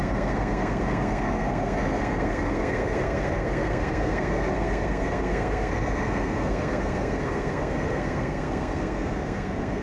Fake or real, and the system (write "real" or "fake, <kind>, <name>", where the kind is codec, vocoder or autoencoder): fake, codec, SNAC